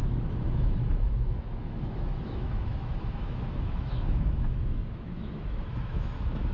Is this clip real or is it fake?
fake